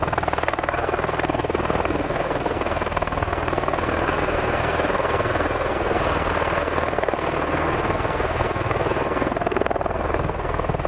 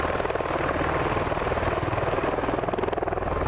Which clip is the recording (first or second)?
second